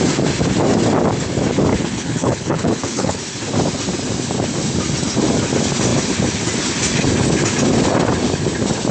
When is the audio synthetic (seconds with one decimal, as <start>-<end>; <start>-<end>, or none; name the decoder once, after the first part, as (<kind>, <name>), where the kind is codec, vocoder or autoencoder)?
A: 1.7-3.2 (codec, HILCodec)